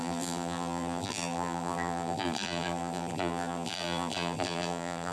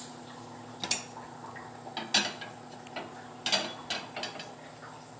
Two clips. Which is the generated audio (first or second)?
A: first